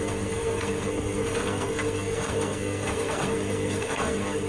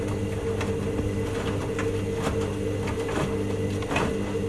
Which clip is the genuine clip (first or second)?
second